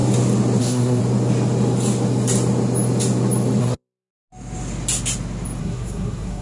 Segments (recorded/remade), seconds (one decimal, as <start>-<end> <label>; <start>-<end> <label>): 0.0-0.6 recorded; 0.6-1.0 remade; 1.0-3.6 recorded; 3.6-4.1 remade; 4.1-5.6 recorded; 5.6-6.4 remade